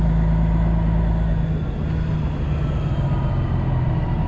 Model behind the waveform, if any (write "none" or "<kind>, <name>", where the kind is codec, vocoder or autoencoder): none